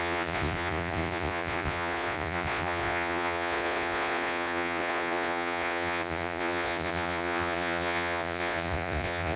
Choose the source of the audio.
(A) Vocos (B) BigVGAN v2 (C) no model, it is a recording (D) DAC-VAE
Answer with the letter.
A